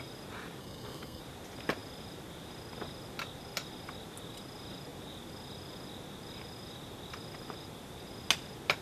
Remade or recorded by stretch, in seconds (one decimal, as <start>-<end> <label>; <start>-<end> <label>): 0.0-0.6 recorded; 0.6-1.2 remade; 1.2-8.8 recorded